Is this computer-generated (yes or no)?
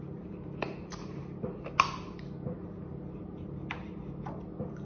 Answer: no